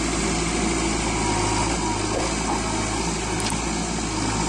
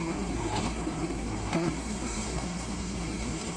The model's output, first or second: second